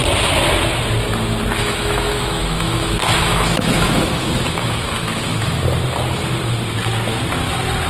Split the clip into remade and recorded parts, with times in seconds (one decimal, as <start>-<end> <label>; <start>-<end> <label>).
0.0-1.6 recorded; 1.6-5.6 remade; 5.6-7.9 recorded